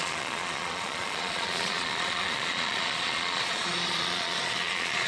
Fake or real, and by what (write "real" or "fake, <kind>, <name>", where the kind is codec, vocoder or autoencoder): fake, vocoder, Vocos